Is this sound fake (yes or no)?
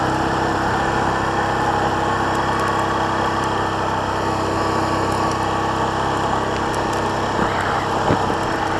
no